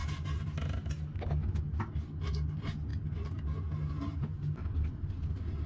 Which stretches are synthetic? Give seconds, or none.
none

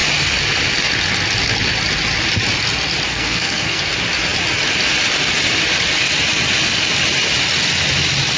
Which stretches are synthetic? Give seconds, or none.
3.1-3.9 (codec, SNAC)